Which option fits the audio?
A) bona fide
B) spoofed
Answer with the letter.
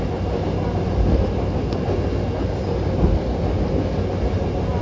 A